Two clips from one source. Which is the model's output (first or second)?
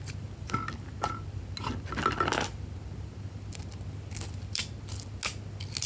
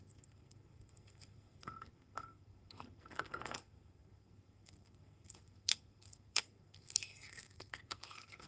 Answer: second